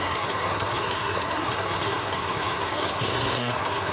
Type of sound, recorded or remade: remade